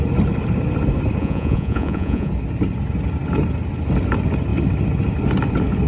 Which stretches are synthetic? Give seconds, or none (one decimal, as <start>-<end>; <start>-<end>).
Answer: 1.2-2.3